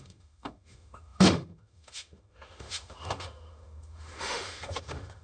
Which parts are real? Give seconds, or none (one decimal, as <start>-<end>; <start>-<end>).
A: none